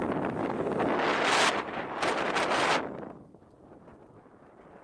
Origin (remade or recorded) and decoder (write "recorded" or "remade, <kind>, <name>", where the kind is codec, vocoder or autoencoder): recorded